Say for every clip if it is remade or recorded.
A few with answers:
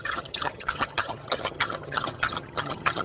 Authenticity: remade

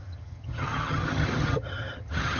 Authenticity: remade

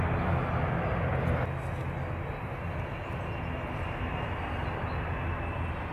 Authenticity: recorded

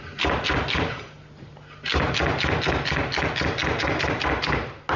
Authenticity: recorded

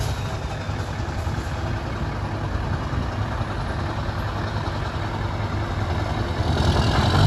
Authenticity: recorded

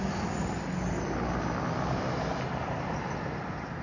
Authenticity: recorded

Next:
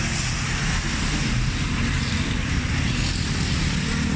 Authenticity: recorded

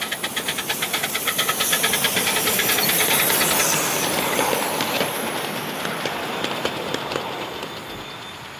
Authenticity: recorded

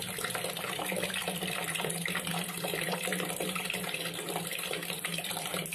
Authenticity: remade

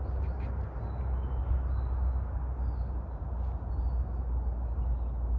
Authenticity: recorded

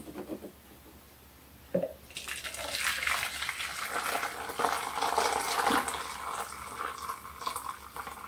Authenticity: recorded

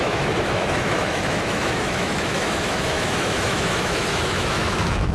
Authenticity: remade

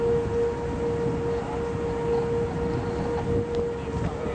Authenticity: recorded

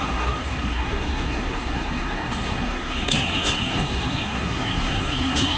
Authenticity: remade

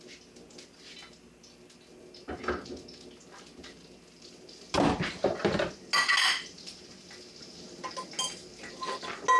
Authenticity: recorded